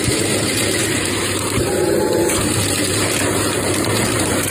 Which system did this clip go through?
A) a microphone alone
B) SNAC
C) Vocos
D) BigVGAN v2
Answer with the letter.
D